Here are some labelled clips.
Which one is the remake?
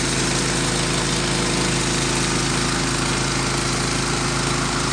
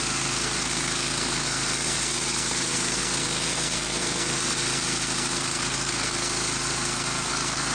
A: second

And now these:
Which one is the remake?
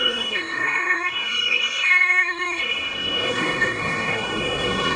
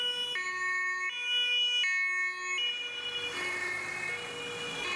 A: first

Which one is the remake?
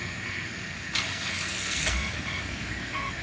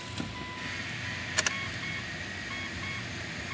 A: first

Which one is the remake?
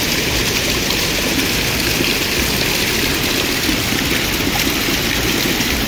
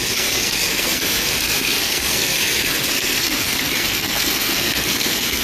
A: second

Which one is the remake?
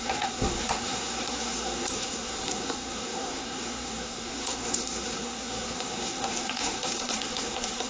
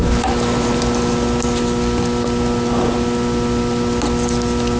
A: first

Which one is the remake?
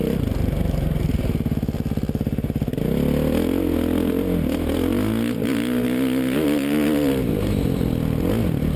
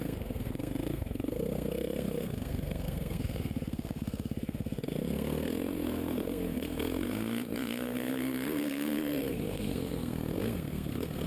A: second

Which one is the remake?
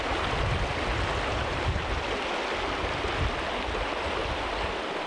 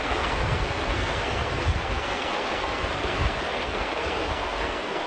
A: second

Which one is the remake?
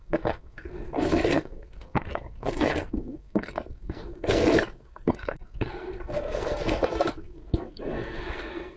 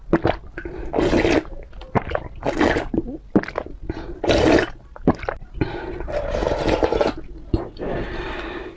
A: first